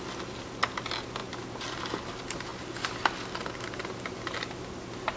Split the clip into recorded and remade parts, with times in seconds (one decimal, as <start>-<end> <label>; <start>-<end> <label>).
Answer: 0.0-5.2 recorded

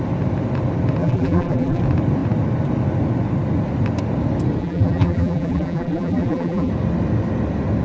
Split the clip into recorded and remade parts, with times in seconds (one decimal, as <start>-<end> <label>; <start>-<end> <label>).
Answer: 0.0-1.0 recorded; 1.0-1.8 remade; 1.8-4.6 recorded; 4.6-6.7 remade; 6.7-7.8 recorded

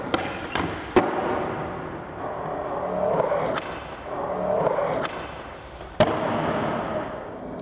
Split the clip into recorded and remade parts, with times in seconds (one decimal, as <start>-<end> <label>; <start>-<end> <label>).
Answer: 0.0-7.6 recorded

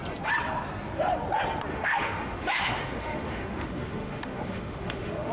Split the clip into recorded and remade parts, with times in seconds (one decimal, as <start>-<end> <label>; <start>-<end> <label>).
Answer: 0.0-1.7 recorded; 1.7-5.3 remade

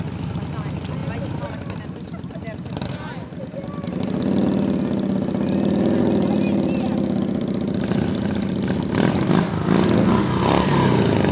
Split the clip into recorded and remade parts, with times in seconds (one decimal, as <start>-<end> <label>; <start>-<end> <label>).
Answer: 0.0-11.3 recorded

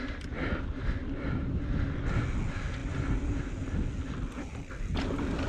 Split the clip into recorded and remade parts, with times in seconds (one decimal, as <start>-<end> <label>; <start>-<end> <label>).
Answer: 0.0-5.5 recorded

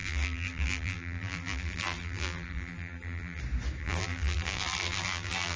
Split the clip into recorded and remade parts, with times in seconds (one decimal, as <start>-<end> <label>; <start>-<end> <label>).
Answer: 0.0-3.4 remade; 3.4-3.8 recorded; 3.8-5.6 remade